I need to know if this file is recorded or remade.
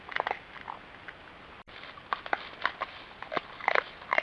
recorded